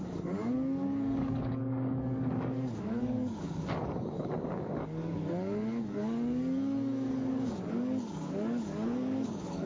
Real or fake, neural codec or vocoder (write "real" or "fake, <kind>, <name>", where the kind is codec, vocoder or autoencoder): fake, codec, DAC